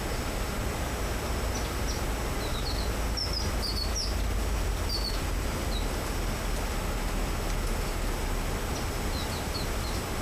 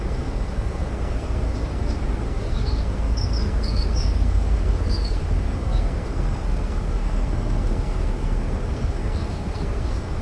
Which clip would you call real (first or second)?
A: first